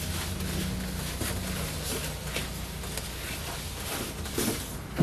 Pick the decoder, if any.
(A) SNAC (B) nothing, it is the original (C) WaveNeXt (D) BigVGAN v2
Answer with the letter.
B